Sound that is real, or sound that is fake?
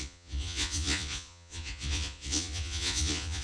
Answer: fake